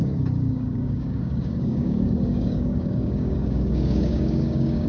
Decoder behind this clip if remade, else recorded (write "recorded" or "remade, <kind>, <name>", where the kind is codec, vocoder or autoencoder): remade, codec, DAC